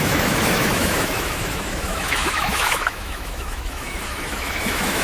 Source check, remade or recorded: remade